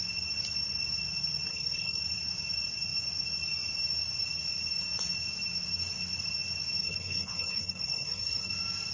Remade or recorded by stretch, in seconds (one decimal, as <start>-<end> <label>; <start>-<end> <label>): 0.0-1.5 recorded; 1.5-2.0 remade; 2.0-6.8 recorded; 6.8-8.5 remade; 8.5-8.9 recorded